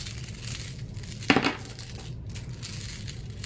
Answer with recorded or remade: recorded